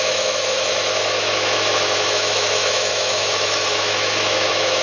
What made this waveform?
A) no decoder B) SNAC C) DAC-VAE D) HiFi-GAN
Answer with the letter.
C